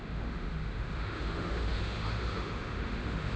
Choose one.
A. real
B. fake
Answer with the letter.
B